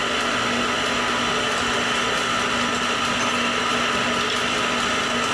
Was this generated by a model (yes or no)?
no